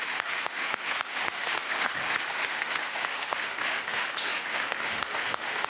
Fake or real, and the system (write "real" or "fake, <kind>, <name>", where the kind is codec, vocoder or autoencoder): fake, autoencoder, DAC-VAE